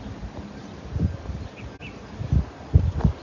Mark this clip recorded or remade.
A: recorded